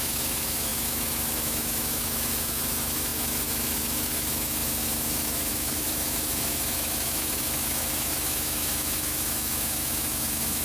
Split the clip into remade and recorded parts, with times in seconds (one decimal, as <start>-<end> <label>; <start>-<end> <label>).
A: 0.0-10.6 remade